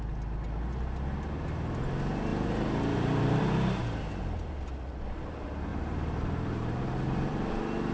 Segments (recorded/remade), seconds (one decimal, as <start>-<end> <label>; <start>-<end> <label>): 0.0-2.3 recorded; 2.3-3.8 remade; 3.8-5.7 recorded; 5.7-7.5 remade; 7.5-7.9 recorded